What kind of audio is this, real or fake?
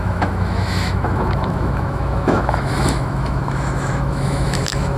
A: fake